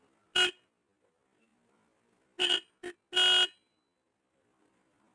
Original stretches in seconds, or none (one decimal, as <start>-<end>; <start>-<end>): 0.0-5.1